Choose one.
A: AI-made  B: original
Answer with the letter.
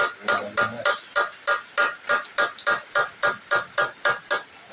B